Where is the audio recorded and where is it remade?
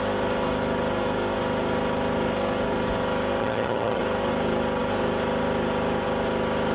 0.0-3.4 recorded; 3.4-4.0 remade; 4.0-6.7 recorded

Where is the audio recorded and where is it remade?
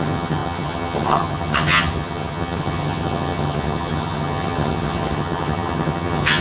0.0-6.4 remade